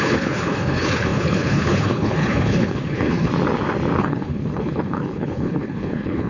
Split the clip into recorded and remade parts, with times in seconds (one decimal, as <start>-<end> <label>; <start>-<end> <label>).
0.0-3.3 remade; 3.3-4.0 recorded; 4.0-6.3 remade